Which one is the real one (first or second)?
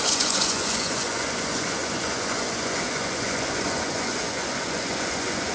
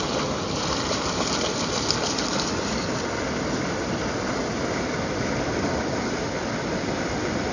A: second